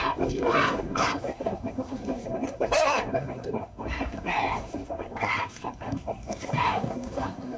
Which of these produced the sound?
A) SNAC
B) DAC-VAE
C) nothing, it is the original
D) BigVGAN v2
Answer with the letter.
A